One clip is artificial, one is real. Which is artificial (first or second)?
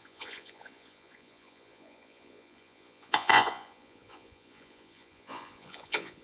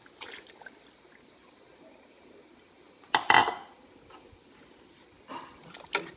first